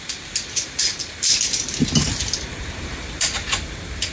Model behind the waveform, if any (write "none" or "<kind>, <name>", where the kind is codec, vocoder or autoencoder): none